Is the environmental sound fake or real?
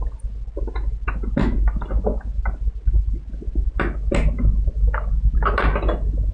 real